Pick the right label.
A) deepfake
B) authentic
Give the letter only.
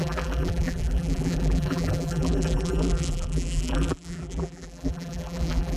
A